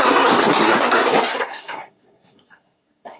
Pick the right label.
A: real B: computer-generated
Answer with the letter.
B